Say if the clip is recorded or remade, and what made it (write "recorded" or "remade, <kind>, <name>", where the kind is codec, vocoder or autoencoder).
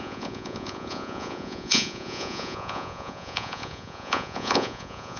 remade, vocoder, Vocos